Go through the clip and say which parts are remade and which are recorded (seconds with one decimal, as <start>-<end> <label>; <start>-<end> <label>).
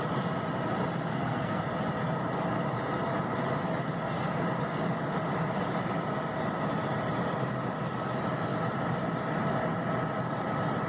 0.0-1.1 recorded; 1.1-1.6 remade; 1.6-10.9 recorded